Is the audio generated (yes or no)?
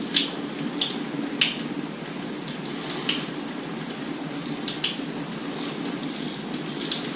no